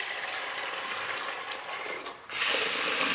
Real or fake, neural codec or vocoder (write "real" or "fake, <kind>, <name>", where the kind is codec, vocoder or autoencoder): fake, vocoder, BigVGAN v2